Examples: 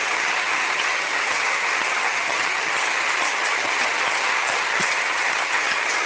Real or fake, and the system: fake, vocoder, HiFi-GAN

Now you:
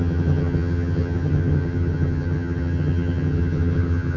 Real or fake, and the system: fake, vocoder, HiFi-GAN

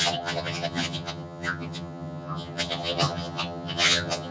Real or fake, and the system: fake, vocoder, HiFi-GAN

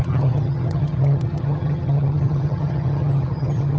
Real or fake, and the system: fake, vocoder, HiFi-GAN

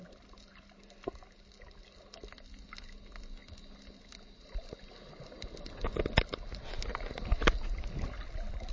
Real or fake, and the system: real